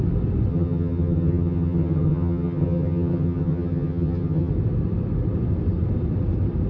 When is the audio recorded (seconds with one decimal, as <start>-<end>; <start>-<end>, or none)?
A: 0.0-0.5; 4.5-6.7

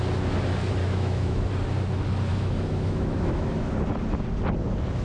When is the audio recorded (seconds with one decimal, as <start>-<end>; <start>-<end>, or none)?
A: 0.0-0.8; 1.5-2.3; 3.7-5.0

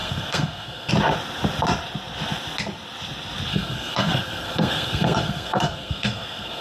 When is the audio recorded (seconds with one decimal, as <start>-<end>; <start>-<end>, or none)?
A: 0.9-3.5

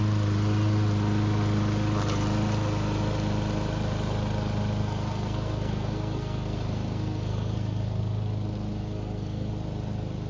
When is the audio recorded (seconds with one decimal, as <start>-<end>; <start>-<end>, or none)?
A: 0.0-4.8; 8.0-8.8; 9.5-10.3

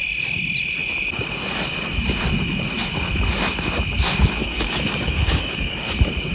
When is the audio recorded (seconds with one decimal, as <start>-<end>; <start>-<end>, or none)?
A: 0.0-4.4; 5.8-6.3